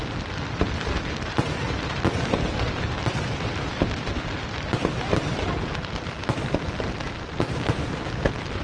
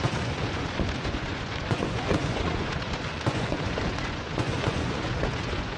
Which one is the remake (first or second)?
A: second